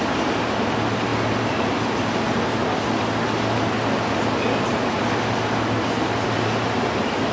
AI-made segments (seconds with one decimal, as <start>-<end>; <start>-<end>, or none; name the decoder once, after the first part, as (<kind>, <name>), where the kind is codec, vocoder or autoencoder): none